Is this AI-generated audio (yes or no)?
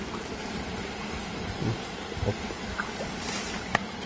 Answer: no